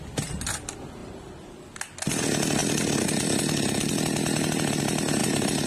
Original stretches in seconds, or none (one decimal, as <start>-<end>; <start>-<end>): 0.0-1.0; 1.6-5.2